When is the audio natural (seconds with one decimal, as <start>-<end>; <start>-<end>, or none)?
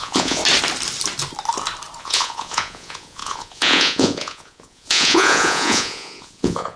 0.4-2.0